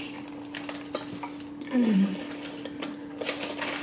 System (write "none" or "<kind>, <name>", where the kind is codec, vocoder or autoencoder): none